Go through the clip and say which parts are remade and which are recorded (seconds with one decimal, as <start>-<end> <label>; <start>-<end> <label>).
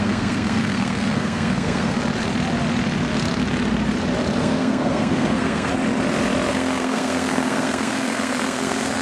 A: 0.0-2.0 remade; 2.0-4.4 recorded; 4.4-5.7 remade; 5.7-6.5 recorded; 6.5-9.0 remade